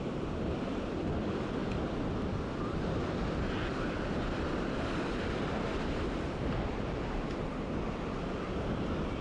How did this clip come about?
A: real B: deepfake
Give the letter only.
B